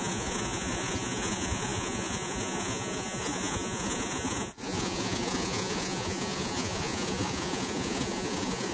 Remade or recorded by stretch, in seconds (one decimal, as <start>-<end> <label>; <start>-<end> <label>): 0.0-8.7 remade